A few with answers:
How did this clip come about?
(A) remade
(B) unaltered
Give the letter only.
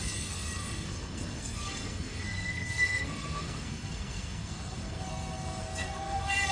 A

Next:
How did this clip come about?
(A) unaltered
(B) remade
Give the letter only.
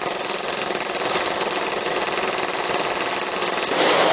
A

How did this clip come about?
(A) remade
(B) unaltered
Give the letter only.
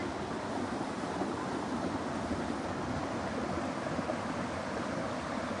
B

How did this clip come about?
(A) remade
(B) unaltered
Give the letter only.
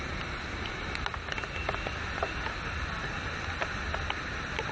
B